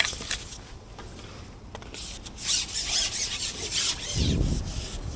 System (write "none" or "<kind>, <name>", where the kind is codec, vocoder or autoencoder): none